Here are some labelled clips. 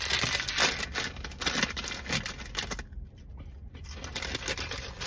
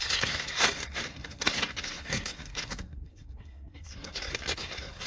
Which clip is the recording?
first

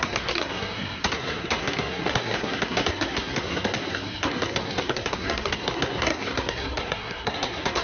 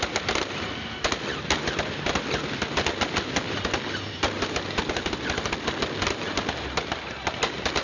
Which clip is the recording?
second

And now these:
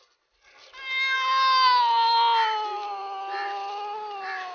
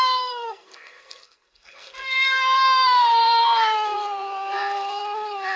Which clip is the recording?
first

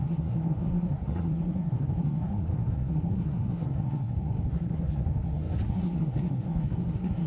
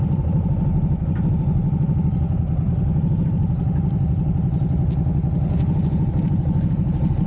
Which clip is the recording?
second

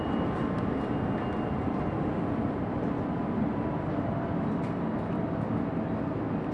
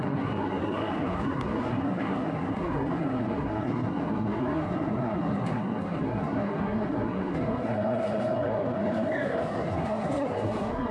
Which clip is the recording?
first